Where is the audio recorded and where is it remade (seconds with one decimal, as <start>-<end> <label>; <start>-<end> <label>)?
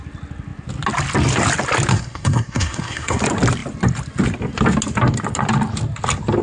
0.0-1.9 recorded; 1.9-3.2 remade; 3.2-6.4 recorded